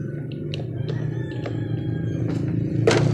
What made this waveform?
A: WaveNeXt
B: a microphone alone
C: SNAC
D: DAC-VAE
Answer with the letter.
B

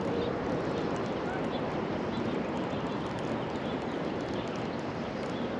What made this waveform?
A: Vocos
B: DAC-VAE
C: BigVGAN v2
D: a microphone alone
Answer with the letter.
D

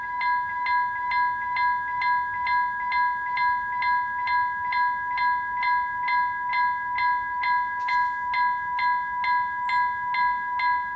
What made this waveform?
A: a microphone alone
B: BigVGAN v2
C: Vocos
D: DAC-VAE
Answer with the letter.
A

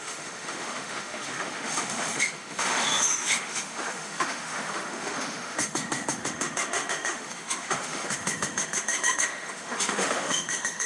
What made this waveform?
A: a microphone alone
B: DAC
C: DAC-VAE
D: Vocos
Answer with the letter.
C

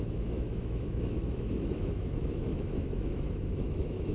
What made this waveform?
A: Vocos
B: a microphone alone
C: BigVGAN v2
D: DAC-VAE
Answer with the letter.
D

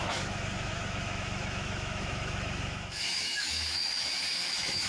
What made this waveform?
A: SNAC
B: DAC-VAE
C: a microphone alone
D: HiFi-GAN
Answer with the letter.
B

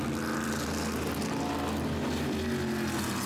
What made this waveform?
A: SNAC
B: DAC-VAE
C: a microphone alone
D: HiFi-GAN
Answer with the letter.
C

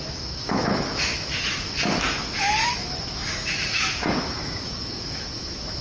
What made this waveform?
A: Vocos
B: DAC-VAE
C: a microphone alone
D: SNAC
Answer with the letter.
B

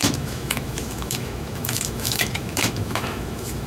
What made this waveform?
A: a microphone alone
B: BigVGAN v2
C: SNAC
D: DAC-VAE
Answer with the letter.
D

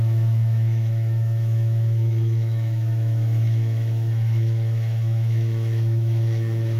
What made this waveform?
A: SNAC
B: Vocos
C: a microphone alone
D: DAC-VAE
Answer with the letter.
D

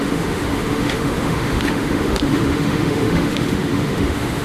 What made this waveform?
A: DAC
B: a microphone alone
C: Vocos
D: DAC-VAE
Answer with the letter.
D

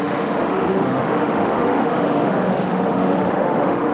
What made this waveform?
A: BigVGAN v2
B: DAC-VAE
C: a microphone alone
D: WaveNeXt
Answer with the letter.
B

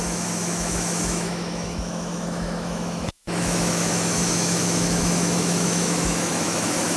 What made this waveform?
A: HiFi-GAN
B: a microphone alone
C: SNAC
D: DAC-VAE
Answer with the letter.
D